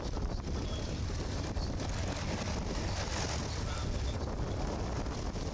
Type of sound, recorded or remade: recorded